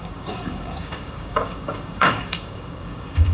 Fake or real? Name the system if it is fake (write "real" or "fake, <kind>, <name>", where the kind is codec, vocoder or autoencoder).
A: fake, codec, DAC